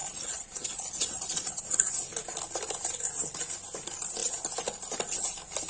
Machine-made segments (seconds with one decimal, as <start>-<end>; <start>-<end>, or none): 0.0-1.6